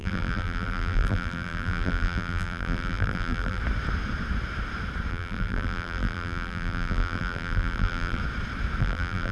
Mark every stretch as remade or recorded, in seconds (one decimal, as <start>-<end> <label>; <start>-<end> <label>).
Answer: 0.0-3.6 remade; 3.6-5.1 recorded; 5.1-8.2 remade; 8.2-8.8 recorded; 8.8-9.3 remade